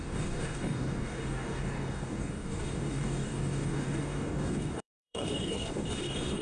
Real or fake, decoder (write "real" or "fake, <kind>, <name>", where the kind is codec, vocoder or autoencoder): fake, codec, DAC